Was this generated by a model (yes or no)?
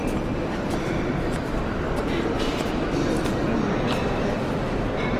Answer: no